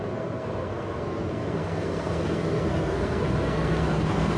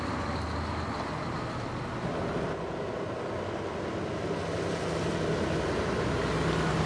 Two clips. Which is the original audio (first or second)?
second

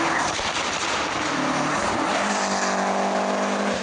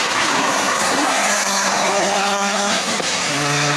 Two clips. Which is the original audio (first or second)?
first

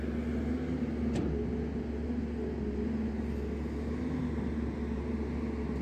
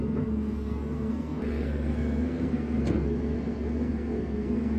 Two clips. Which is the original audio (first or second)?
first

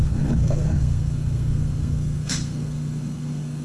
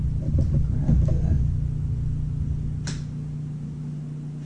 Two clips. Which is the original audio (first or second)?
second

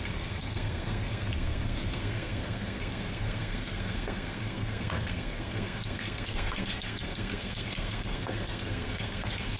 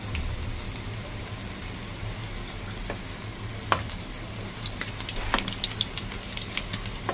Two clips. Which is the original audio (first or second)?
second